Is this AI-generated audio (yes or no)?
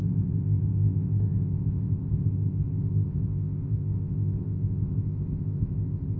yes